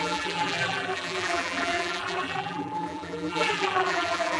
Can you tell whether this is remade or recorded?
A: remade